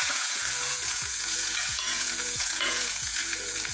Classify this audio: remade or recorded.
remade